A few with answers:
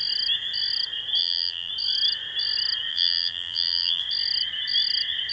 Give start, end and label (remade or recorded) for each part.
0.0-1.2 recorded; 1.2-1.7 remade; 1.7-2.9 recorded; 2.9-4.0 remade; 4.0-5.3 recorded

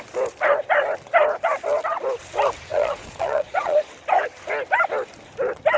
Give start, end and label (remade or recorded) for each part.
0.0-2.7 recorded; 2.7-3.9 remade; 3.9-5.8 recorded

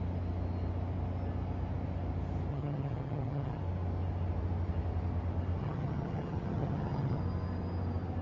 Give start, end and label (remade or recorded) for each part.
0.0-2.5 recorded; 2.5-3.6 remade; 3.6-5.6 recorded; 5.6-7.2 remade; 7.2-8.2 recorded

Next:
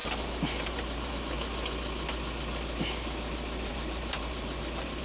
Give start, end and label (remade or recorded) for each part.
0.0-1.1 remade; 1.1-3.7 recorded; 3.7-5.0 remade

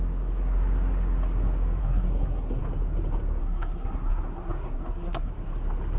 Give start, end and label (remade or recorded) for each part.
0.0-1.8 recorded; 1.8-2.6 remade; 2.6-3.4 recorded; 3.4-5.3 remade; 5.3-6.0 recorded

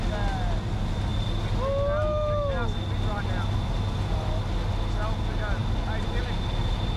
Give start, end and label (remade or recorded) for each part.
0.0-7.0 recorded

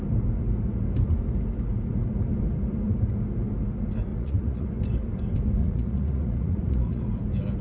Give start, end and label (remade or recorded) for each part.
0.0-4.1 recorded; 4.1-4.7 remade; 4.7-5.6 recorded; 5.6-7.0 remade; 7.0-7.6 recorded